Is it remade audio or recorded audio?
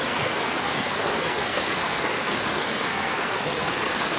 remade